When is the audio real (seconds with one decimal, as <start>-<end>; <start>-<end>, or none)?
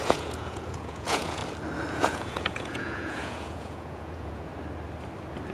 1.4-1.9; 4.5-5.5